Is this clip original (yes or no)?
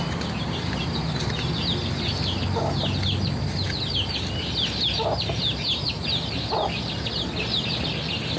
yes